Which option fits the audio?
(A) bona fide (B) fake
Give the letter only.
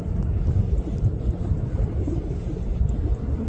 A